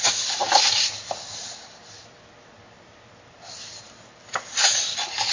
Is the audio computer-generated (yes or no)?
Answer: no